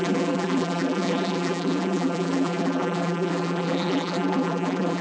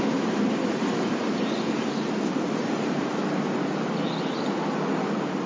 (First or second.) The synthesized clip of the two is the first